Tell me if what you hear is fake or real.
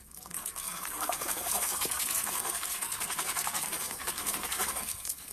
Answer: fake